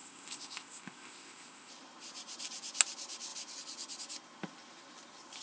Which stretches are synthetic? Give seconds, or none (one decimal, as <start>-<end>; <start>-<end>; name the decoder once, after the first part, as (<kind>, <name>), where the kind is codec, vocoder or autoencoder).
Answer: 0.0-1.7 (codec, ZipCodec)